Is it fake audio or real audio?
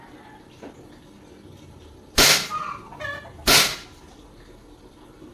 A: real